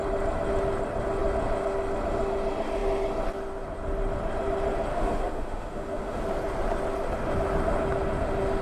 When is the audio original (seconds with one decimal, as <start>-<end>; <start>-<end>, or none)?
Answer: 0.0-4.9; 6.2-8.6